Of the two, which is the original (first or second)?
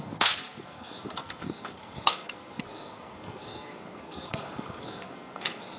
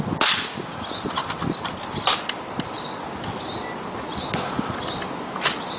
second